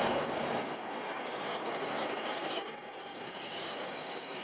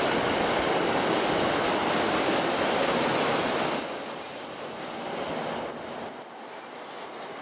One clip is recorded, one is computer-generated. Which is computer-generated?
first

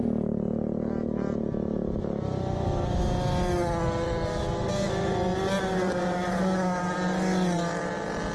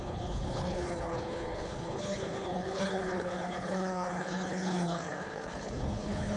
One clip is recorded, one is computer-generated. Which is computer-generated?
second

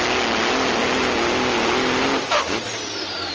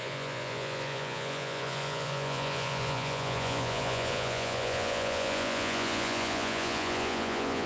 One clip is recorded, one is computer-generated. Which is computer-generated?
second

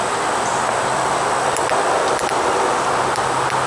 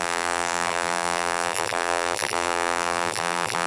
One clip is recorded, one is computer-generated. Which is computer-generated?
second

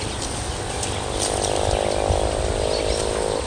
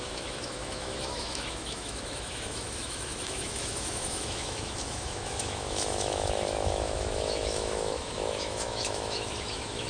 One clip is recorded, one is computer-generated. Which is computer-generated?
second